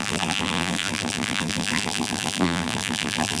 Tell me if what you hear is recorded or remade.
remade